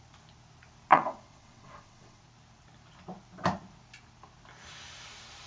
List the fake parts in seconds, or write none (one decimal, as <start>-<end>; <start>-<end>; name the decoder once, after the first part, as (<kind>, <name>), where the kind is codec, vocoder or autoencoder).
0.9-2.2 (vocoder, WaveNeXt)